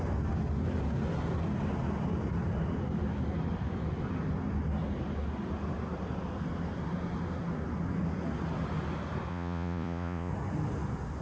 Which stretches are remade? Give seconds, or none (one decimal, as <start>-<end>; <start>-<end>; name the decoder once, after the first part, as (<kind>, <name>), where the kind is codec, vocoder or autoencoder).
9.3-10.3 (vocoder, Vocos)